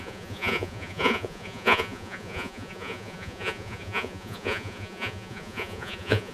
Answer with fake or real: fake